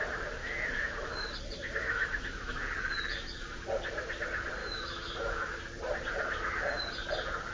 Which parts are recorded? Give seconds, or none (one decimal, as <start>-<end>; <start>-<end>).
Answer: 0.0-0.4; 1.3-1.8; 2.6-4.6; 5.6-7.5